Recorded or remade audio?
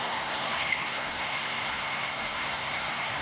remade